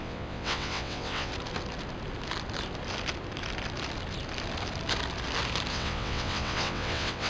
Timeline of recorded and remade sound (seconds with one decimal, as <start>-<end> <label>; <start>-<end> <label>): 0.0-1.3 remade; 1.3-5.7 recorded; 5.7-7.3 remade